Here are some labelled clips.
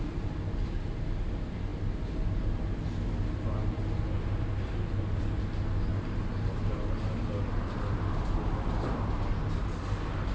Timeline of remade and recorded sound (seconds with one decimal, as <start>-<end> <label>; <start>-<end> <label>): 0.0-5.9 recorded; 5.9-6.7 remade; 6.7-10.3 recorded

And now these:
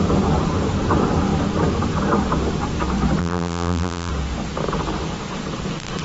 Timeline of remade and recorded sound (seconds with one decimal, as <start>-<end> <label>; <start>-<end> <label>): 0.0-3.2 recorded; 3.2-4.1 remade; 4.1-6.0 recorded

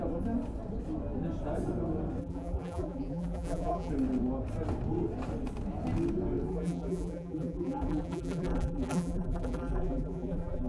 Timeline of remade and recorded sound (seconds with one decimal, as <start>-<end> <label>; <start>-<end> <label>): 0.0-2.2 recorded; 2.2-3.9 remade; 3.9-6.5 recorded; 6.5-10.7 remade

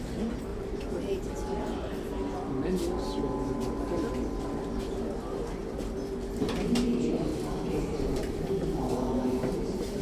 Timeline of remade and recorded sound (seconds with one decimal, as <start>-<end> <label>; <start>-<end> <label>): 0.0-0.5 recorded; 0.5-1.2 remade; 1.2-7.3 recorded; 7.3-8.3 remade; 8.3-10.0 recorded